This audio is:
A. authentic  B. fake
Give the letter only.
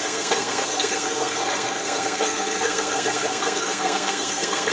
B